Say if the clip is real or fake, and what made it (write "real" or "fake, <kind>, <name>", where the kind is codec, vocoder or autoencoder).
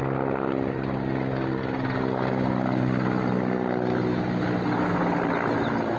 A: real